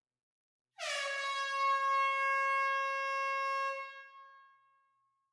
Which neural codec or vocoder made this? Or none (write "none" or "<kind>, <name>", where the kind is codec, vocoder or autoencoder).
none